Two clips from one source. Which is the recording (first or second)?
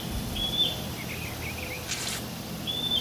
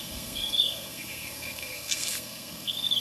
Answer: first